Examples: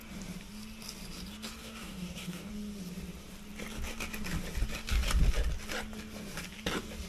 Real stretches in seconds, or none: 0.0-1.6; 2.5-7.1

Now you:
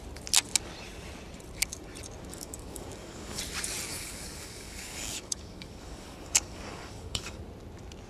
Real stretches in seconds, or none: 0.0-2.3; 3.4-3.9; 7.4-8.1

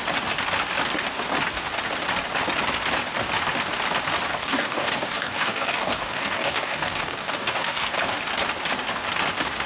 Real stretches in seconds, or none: 0.0-4.3; 7.9-9.7

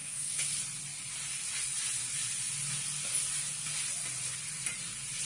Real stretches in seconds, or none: 0.5-5.2

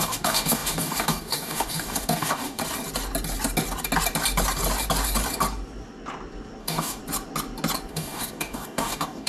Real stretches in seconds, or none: 2.6-6.6; 7.0-7.9

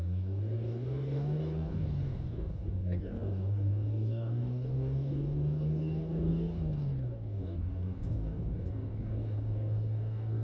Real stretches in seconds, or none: none

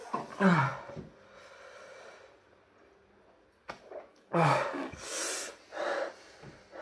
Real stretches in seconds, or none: 0.0-4.1; 5.2-6.8

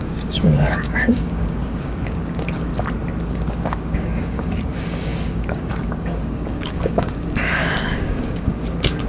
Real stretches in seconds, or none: 2.7-3.2